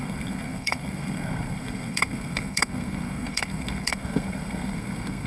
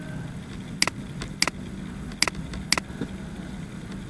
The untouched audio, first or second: second